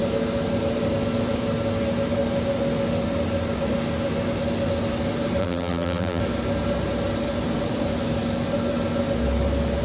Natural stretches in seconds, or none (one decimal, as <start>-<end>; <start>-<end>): 0.0-5.4; 6.2-9.8